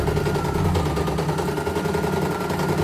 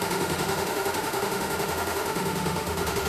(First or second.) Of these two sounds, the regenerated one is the second